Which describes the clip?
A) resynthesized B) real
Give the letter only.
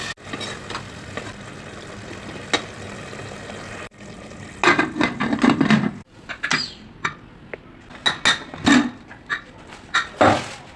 B